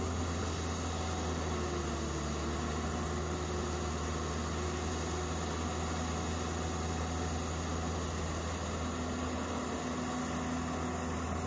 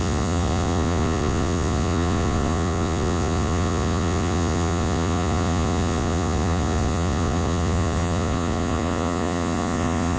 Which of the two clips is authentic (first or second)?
first